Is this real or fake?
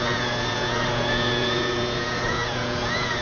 fake